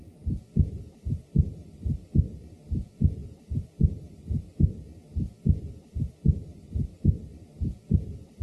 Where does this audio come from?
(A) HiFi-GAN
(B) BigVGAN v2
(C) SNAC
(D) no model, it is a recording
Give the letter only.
B